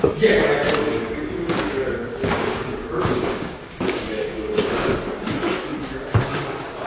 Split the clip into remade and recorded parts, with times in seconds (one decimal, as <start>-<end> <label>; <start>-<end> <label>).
0.0-0.8 recorded; 0.8-4.9 remade; 4.9-6.9 recorded